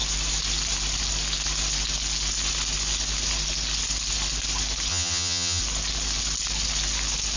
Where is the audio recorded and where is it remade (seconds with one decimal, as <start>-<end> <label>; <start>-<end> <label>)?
0.0-4.9 recorded; 4.9-5.6 remade; 5.6-7.4 recorded